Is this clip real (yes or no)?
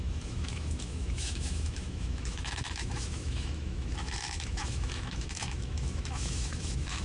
no